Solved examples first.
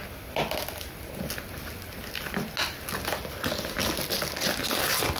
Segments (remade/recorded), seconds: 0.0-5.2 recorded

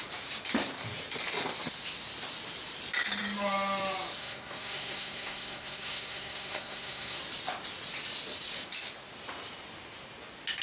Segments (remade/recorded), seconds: 0.0-4.2 recorded; 4.2-7.2 remade; 7.2-10.6 recorded

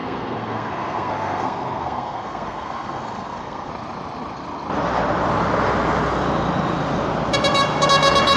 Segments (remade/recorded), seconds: 0.0-3.7 remade; 3.7-8.4 recorded

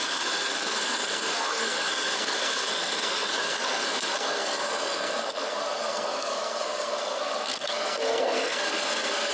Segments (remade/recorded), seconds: 0.0-9.3 remade

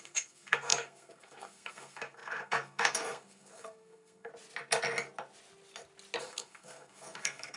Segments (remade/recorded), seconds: 0.0-4.3 remade; 4.3-6.2 recorded; 6.2-7.6 remade

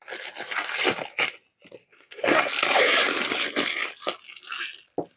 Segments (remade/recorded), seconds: 0.0-1.8 recorded; 1.8-2.5 remade; 2.5-5.2 recorded

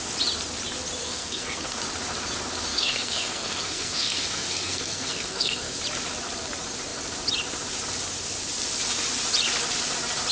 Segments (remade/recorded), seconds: 0.0-1.0 recorded; 1.0-1.8 remade; 1.8-2.7 recorded; 2.7-5.8 remade; 5.8-10.3 recorded